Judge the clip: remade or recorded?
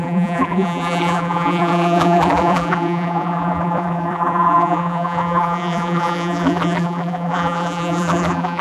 remade